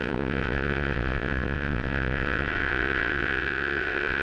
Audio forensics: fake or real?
fake